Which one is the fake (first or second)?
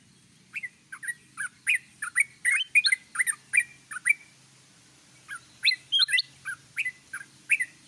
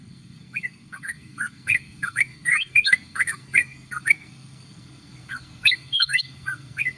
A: second